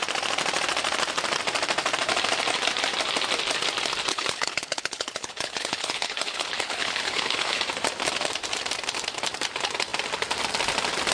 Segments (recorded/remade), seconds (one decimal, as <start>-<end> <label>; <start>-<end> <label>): 0.0-4.1 recorded; 4.1-7.6 remade; 7.6-11.1 recorded